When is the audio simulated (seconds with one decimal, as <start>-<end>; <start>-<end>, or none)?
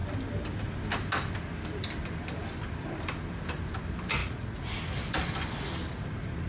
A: 4.2-4.8